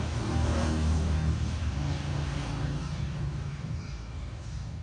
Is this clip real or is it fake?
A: fake